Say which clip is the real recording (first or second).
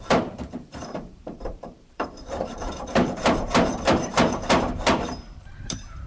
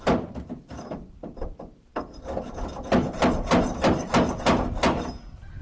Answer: second